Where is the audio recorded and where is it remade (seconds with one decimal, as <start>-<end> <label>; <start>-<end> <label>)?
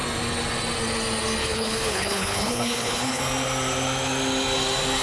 0.0-1.4 recorded; 1.4-3.2 remade; 3.2-5.0 recorded